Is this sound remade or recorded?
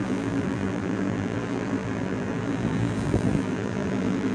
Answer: remade